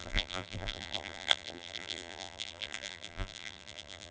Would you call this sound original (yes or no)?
no